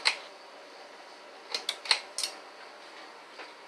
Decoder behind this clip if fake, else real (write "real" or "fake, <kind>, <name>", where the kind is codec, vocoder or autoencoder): real